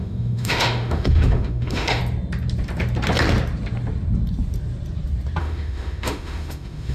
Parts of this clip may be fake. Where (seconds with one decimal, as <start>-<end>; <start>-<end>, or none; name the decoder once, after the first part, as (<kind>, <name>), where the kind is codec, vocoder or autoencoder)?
0.0-2.0 (autoencoder, DAC-VAE); 5.4-6.9